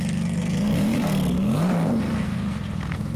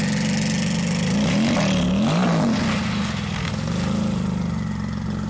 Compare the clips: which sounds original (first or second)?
second